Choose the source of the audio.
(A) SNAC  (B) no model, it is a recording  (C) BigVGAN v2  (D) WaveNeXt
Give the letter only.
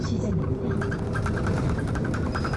C